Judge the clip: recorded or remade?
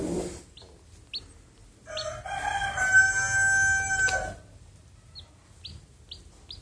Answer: recorded